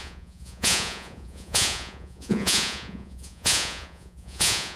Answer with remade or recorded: remade